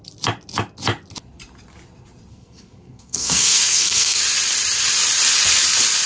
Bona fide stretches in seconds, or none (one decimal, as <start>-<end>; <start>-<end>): 0.0-2.3; 4.2-6.1